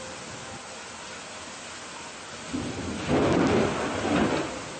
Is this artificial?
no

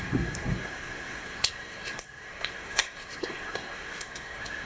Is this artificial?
yes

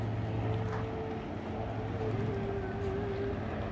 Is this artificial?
no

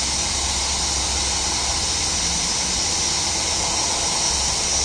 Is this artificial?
no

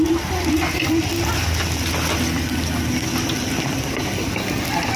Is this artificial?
yes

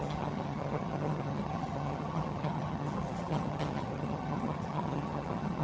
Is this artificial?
yes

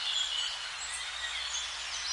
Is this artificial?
no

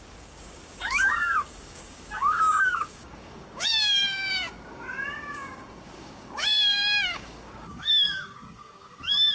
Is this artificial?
yes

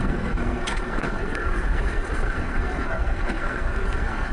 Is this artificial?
yes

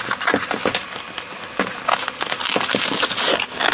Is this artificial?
no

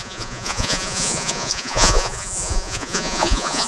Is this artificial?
yes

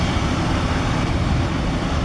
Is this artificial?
yes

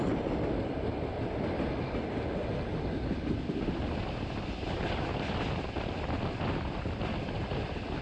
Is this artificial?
no